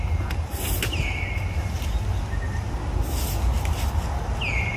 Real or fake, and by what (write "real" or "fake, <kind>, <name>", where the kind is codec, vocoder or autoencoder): real